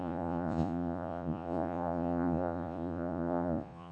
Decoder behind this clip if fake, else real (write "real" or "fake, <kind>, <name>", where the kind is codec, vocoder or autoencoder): fake, vocoder, Vocos